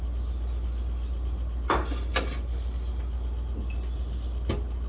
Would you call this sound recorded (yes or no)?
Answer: yes